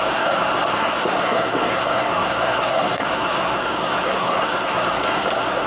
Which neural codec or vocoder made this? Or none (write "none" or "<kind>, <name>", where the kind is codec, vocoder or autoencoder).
codec, SNAC